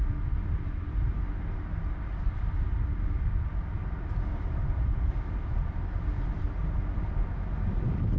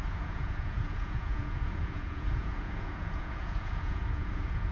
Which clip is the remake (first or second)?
second